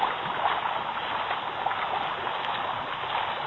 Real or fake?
real